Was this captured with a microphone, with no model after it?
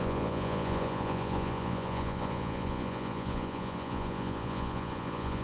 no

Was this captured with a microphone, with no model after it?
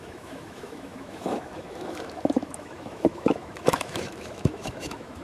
no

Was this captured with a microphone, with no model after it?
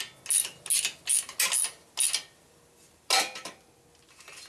yes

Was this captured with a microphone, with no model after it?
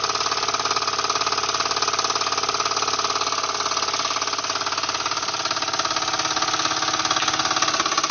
yes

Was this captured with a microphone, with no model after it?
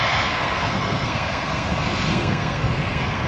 no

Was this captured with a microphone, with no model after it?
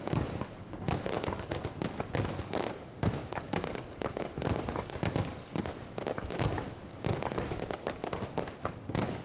no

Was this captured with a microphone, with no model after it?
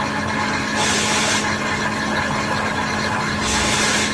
yes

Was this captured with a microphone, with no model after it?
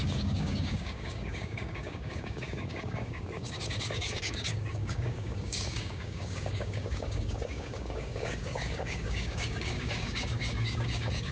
no